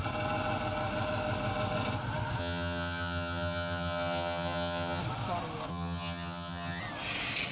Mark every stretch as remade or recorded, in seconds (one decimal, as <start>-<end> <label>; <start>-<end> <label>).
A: 0.0-2.4 recorded; 2.4-5.0 remade; 5.0-5.7 recorded; 5.7-6.8 remade; 6.8-7.5 recorded

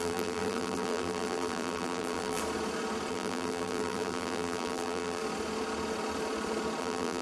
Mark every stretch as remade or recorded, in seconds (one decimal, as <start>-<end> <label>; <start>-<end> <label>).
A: 0.0-2.4 remade; 2.4-3.1 recorded; 3.1-5.2 remade; 5.2-6.8 recorded; 6.8-7.2 remade